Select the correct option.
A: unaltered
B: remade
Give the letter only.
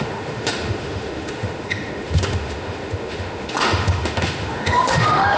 B